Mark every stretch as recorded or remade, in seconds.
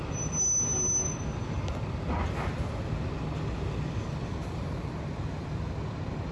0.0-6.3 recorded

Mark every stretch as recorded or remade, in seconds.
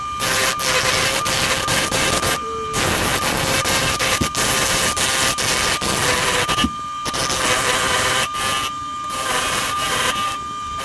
0.0-10.8 recorded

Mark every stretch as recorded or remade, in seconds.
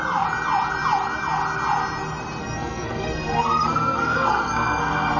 0.0-2.4 recorded; 2.4-5.2 remade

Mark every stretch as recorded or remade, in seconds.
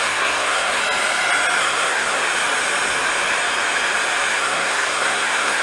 0.0-0.8 remade; 0.8-1.6 recorded; 1.6-2.2 remade; 2.2-4.3 recorded; 4.3-5.6 remade